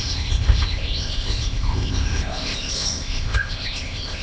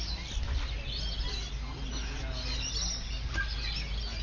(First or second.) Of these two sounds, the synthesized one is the first